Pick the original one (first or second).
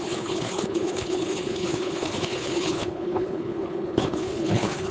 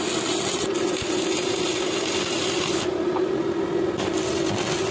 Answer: second